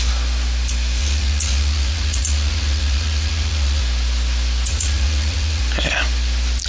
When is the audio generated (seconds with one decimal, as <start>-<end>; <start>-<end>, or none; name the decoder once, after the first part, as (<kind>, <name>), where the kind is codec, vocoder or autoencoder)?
1.0-3.8 (vocoder, Vocos); 4.7-5.6